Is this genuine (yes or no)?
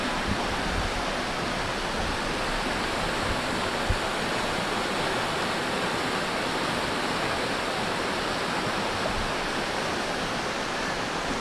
yes